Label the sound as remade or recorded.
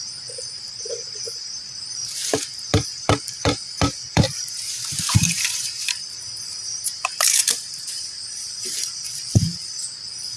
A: remade